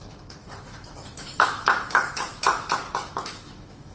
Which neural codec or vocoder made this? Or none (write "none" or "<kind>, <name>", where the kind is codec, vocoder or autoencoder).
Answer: autoencoder, DAC-VAE